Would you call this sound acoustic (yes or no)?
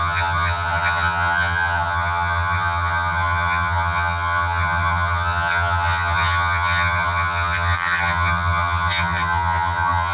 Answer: no